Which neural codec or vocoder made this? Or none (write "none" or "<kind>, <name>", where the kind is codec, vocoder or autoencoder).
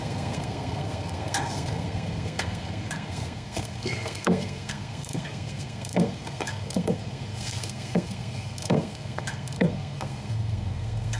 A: codec, SNAC